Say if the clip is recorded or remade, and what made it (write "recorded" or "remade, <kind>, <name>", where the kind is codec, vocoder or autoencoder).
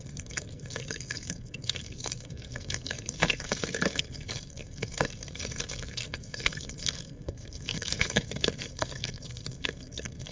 remade, codec, SNAC